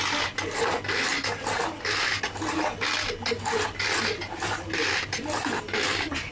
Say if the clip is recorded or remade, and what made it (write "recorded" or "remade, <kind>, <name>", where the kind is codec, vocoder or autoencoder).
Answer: recorded